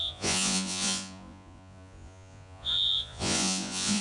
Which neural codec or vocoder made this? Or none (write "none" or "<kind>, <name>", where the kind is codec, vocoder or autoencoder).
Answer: vocoder, Vocos